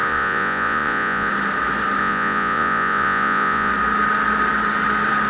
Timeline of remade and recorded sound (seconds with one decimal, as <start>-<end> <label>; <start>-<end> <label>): 0.0-1.3 remade; 1.3-2.0 recorded; 2.0-3.7 remade; 3.7-5.3 recorded